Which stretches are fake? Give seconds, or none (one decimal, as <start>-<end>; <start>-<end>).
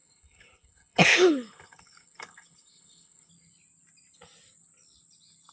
0.0-3.3